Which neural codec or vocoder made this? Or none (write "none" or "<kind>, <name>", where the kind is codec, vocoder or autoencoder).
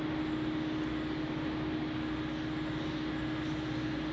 none